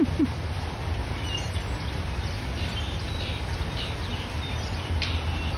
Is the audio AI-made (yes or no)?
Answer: yes